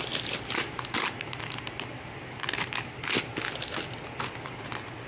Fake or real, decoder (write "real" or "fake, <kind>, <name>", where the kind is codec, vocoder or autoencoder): real